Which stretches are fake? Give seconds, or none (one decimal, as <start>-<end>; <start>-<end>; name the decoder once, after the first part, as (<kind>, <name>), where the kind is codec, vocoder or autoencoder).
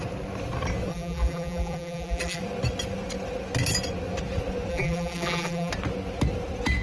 0.9-2.4 (vocoder, BigVGAN v2); 4.7-5.7